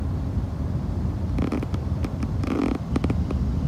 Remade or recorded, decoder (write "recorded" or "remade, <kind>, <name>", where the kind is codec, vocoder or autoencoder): recorded